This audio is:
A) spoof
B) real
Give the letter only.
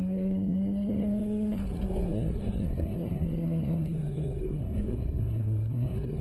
A